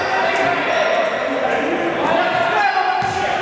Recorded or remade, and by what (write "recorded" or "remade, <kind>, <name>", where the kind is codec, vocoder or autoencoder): recorded